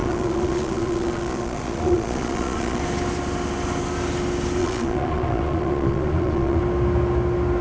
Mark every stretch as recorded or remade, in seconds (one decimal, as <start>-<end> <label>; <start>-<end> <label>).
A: 0.0-2.8 remade; 2.8-4.6 recorded; 4.6-6.6 remade; 6.6-7.6 recorded